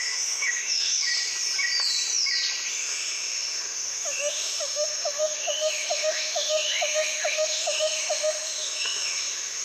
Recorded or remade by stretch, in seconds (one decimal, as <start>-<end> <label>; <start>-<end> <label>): 0.0-1.1 remade; 1.1-2.7 recorded; 2.7-9.6 remade